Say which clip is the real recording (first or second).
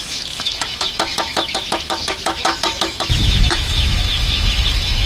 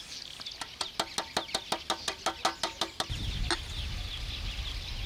second